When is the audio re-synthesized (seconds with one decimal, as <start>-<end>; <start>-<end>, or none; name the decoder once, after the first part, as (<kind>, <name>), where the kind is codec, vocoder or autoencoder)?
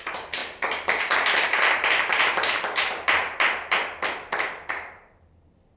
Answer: 0.0-0.4 (vocoder, BigVGAN v2); 1.0-3.2; 4.7-5.8